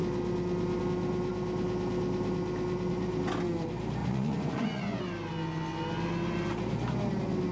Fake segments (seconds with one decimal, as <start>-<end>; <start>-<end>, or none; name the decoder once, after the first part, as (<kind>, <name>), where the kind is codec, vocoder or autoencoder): 4.0-5.0 (vocoder, Vocos)